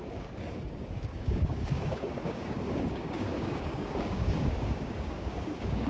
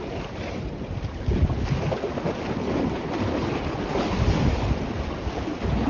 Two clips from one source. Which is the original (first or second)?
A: second